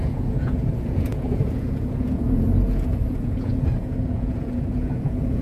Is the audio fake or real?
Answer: fake